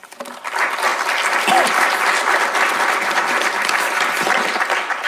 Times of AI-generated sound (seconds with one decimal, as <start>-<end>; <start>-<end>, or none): none